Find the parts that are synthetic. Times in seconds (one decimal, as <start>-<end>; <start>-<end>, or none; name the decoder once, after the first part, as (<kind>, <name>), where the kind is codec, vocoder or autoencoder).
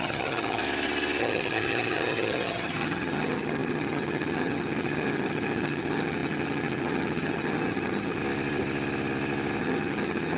0.0-0.6 (vocoder, HiFi-GAN); 1.2-8.2; 9.6-10.4